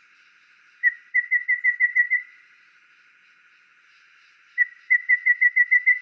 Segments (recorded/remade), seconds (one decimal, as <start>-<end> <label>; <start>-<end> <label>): 0.0-6.0 recorded